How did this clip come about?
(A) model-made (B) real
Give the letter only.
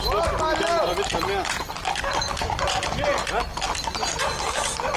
B